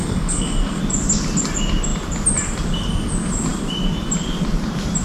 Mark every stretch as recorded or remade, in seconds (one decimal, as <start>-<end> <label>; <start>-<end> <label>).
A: 0.0-0.8 remade; 0.8-5.0 recorded